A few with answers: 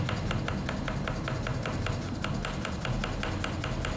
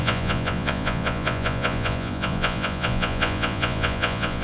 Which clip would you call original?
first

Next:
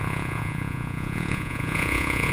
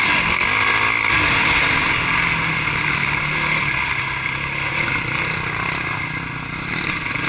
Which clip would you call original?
second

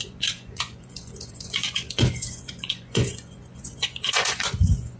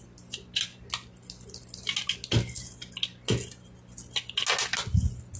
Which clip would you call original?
second